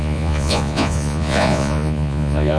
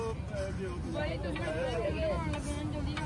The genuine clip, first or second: second